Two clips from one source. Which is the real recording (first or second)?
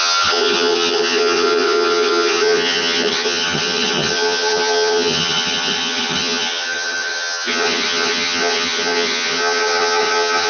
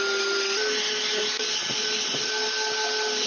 second